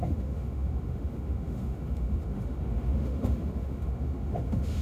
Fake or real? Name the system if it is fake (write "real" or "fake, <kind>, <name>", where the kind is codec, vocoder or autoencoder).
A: fake, autoencoder, DAC-VAE